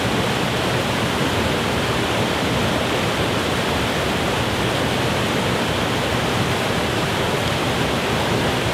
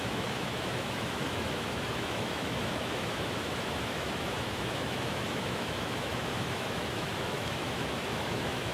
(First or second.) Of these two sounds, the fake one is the second